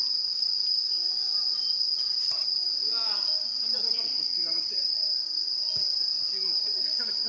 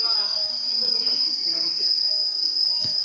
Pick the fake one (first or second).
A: second